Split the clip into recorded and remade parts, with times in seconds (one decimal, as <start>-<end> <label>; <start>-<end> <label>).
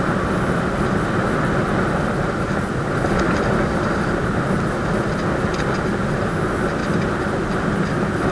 0.0-8.3 recorded